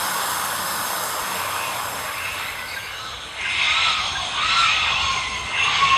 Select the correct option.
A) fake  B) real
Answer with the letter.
A